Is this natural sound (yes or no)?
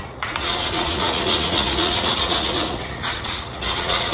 no